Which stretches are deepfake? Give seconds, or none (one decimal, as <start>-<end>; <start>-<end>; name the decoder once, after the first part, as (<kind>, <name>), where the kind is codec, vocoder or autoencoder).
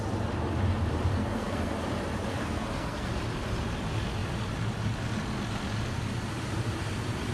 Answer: 1.1-1.7 (codec, SNAC); 2.3-3.1